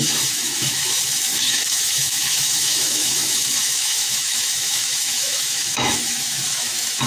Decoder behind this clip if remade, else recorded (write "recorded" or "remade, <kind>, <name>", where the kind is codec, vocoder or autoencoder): remade, autoencoder, DAC-VAE